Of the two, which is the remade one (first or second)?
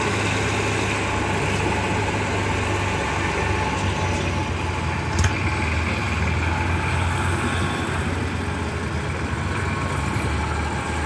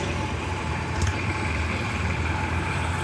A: second